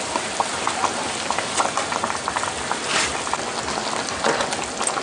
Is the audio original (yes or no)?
yes